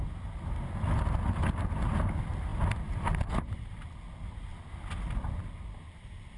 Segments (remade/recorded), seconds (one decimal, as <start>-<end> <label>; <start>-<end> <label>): 0.0-2.5 recorded; 2.5-3.3 remade; 3.3-6.4 recorded